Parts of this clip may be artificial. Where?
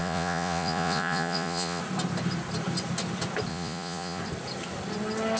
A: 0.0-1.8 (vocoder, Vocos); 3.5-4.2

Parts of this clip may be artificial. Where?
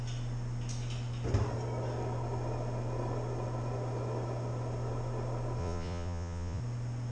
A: 5.6-6.6 (vocoder, Vocos)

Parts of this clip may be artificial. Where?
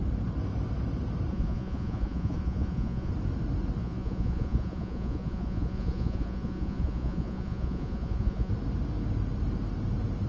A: 1.3-3.1 (vocoder, Vocos); 3.8-8.5